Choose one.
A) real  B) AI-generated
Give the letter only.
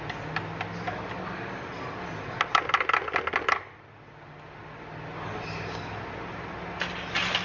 A